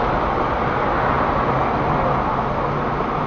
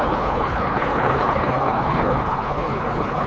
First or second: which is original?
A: first